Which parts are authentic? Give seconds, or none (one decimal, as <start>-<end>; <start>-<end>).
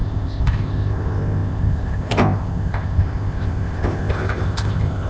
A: none